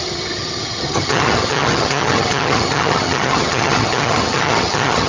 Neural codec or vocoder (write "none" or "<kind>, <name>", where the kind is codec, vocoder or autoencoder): vocoder, HiFi-GAN